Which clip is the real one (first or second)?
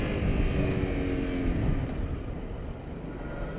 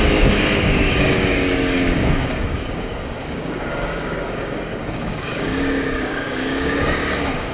first